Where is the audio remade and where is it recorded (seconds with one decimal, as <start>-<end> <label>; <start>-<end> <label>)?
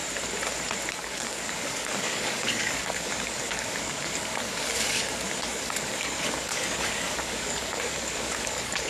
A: 0.0-0.9 recorded; 0.9-8.9 remade